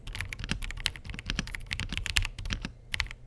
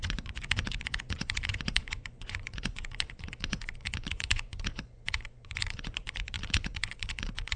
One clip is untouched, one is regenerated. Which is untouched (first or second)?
first